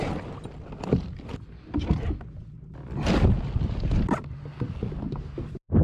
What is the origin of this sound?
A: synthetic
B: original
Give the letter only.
B